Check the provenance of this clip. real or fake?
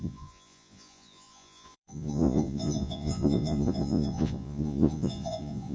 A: fake